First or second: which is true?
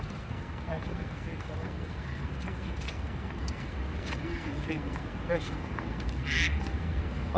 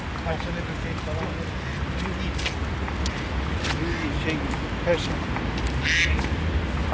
second